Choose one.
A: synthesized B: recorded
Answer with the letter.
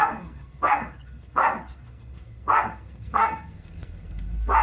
A